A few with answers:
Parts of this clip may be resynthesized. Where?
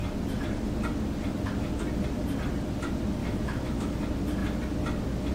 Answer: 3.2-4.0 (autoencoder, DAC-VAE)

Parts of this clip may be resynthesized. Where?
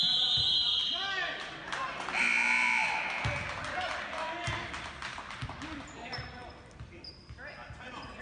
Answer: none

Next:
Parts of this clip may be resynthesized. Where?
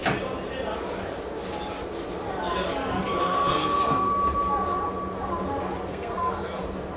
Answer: 3.2-4.1 (codec, SNAC); 5.9-6.6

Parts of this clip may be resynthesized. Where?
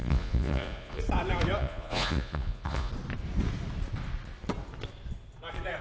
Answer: 0.0-1.0 (vocoder, Vocos); 1.6-2.9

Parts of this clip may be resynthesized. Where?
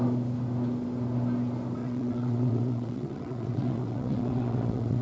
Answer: 1.8-5.0 (vocoder, WaveNeXt)